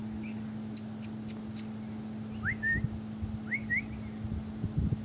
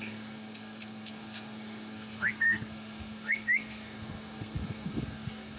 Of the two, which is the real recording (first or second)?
first